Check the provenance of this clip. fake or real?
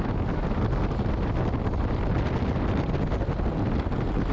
real